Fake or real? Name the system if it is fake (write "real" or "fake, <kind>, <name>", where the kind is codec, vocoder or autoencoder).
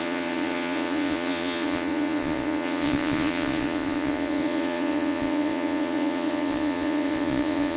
fake, vocoder, Vocos